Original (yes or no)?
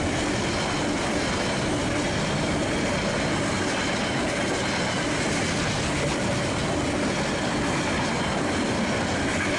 yes